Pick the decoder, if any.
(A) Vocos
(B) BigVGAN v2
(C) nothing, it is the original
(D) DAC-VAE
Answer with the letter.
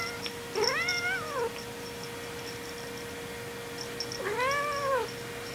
C